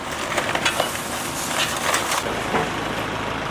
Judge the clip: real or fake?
real